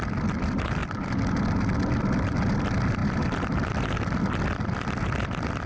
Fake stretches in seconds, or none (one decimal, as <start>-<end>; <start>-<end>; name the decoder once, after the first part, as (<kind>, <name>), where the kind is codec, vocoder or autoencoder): none